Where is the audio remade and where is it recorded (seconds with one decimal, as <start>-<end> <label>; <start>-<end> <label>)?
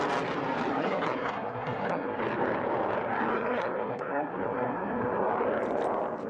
0.0-0.7 recorded; 0.7-2.2 remade; 2.2-3.3 recorded; 3.3-5.3 remade; 5.3-6.3 recorded